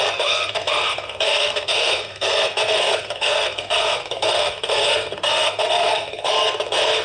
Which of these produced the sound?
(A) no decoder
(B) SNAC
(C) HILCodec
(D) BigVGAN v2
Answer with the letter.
B